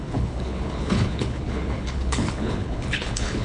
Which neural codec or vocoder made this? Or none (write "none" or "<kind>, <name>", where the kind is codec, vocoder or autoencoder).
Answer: codec, HILCodec